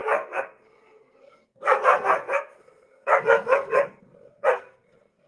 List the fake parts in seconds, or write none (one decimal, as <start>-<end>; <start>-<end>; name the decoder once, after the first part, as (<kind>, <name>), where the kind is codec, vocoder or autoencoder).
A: 0.0-5.3 (codec, SNAC)